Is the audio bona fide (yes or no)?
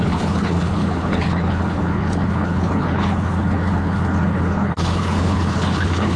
no